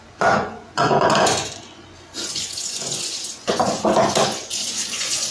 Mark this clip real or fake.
fake